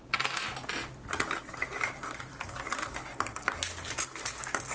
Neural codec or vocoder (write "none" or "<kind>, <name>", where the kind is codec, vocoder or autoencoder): none